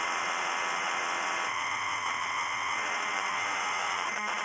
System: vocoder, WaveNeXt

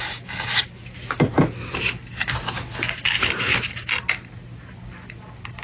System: none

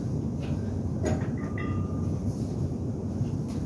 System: none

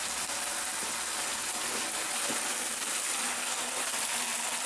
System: none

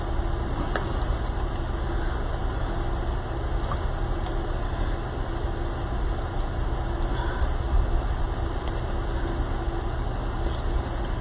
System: none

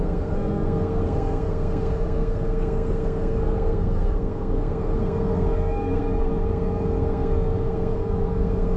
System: codec, SNAC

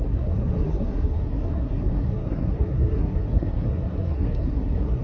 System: codec, SNAC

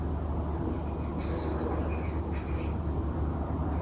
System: none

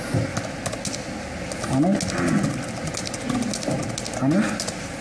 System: none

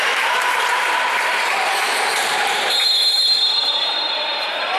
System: vocoder, BigVGAN v2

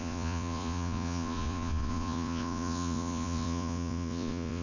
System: vocoder, Vocos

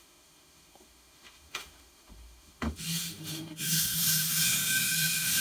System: autoencoder, DAC-VAE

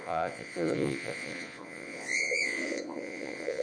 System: vocoder, Vocos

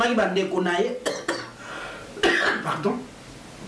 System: none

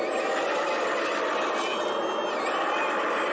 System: none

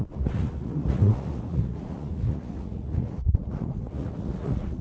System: vocoder, Vocos